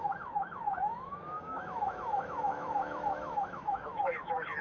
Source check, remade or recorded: remade